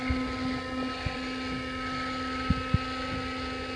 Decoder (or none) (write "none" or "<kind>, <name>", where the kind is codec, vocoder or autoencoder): none